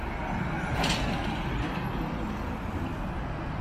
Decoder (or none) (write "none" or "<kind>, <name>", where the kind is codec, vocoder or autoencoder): none